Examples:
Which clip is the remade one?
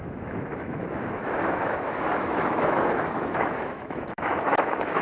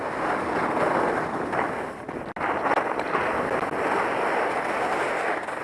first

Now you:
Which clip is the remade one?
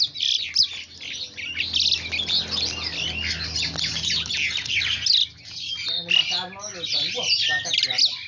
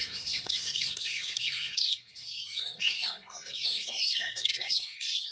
second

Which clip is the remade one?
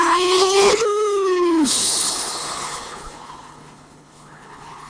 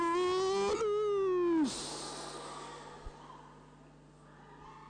first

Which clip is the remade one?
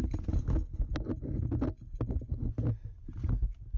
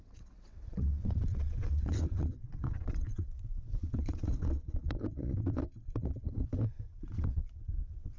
second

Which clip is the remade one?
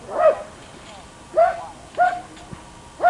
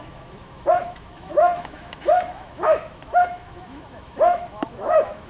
second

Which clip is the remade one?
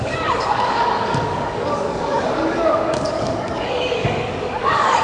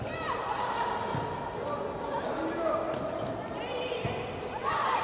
first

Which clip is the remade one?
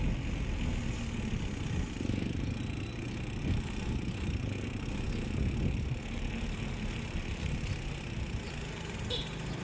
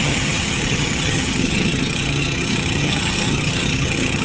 second